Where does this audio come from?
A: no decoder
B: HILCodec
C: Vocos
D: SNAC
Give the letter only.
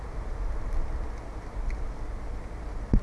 A